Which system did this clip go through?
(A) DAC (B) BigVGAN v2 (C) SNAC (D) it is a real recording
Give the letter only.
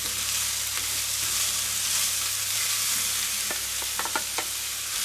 D